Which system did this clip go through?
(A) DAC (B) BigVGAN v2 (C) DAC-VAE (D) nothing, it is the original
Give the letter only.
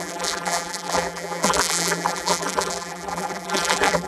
B